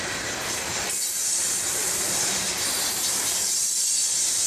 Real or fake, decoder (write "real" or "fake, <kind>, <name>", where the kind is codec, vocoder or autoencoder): fake, vocoder, BigVGAN v2